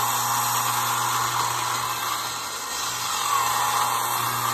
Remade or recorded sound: recorded